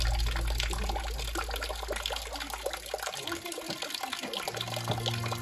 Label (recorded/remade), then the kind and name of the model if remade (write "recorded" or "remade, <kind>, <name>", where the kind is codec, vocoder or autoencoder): recorded